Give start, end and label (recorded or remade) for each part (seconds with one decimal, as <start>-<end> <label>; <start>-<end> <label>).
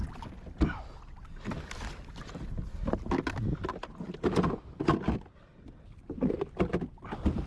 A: 0.0-7.5 recorded